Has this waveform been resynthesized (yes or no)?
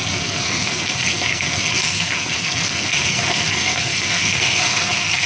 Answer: yes